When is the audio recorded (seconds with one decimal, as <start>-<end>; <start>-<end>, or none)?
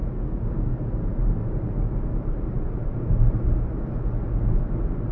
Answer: 0.0-1.4; 3.8-5.1